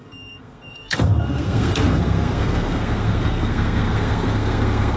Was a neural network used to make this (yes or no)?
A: yes